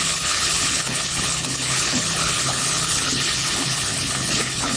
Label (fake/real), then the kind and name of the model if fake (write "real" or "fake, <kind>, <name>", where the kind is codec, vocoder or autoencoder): fake, codec, HILCodec